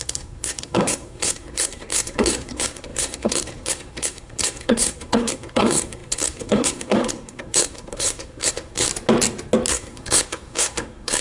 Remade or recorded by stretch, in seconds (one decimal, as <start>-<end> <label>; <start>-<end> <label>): 0.0-8.9 remade; 8.9-9.7 recorded; 9.7-11.2 remade